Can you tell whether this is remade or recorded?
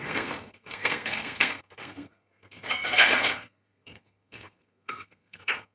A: remade